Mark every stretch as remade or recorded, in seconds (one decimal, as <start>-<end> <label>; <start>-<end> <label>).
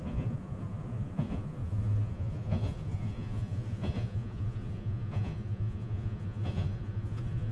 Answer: 0.0-7.5 remade